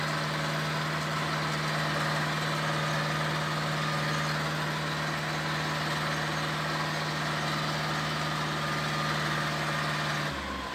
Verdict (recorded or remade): recorded